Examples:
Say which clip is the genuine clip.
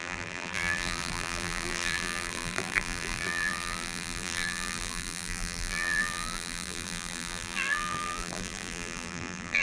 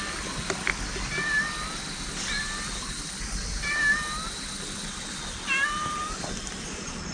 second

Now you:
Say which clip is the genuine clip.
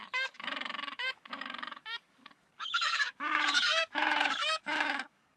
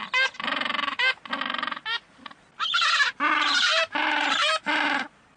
second